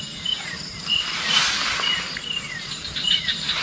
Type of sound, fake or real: fake